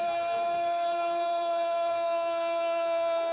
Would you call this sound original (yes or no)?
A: no